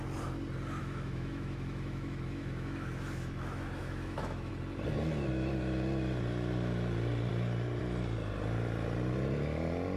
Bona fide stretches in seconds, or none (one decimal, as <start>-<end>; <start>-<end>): 0.0-0.8; 4.5-10.0